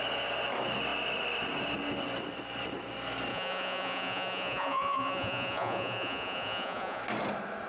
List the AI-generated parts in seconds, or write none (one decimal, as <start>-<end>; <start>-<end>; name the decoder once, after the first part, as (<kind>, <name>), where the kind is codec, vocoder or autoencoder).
3.3-7.0 (vocoder, Vocos)